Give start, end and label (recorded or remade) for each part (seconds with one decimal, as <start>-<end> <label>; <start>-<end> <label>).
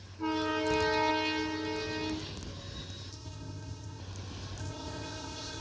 0.0-3.1 recorded; 3.1-4.0 remade; 4.0-4.6 recorded; 4.6-5.6 remade